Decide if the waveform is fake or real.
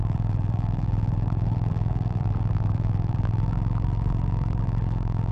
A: fake